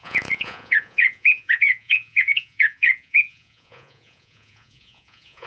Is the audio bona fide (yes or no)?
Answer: no